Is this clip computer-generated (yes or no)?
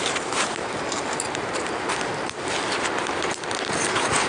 yes